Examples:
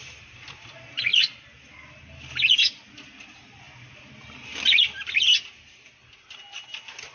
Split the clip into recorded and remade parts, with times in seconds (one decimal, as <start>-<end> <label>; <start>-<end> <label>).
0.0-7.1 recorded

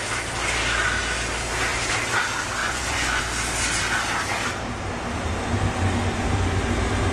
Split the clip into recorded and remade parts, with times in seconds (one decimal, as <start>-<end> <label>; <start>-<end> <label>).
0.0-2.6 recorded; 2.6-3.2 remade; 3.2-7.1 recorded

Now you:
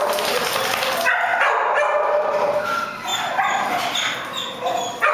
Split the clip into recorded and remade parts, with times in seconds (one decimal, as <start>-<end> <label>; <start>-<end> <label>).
0.0-5.1 recorded